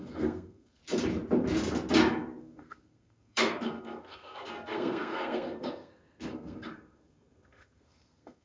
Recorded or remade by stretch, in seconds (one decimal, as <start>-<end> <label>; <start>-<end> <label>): 0.0-0.8 remade; 0.8-2.4 recorded; 2.4-8.4 remade